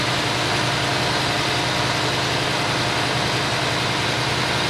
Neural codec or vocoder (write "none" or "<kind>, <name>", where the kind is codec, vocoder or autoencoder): none